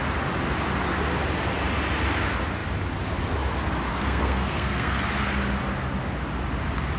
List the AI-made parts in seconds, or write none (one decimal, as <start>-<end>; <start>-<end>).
3.9-5.0